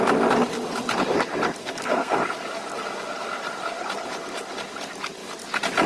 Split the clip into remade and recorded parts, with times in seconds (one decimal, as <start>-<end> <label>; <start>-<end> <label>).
0.0-1.6 recorded; 1.6-2.2 remade; 2.2-5.9 recorded

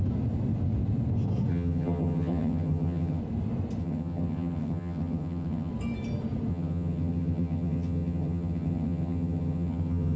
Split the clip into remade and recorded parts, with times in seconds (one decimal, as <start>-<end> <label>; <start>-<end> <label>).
0.0-1.5 recorded; 1.5-3.2 remade; 3.2-3.8 recorded; 3.8-5.7 remade; 5.7-6.5 recorded; 6.5-10.2 remade

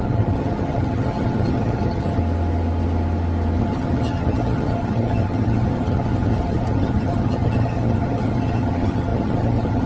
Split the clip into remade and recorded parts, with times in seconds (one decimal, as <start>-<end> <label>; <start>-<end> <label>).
0.0-2.2 remade; 2.2-3.6 recorded; 3.6-9.9 remade

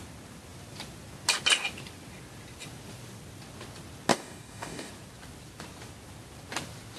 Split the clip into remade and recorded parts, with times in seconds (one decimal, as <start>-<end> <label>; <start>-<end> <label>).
0.0-4.1 recorded; 4.1-4.9 remade; 4.9-7.0 recorded